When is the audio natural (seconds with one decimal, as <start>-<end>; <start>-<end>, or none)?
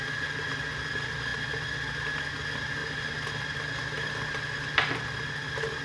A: 0.0-5.8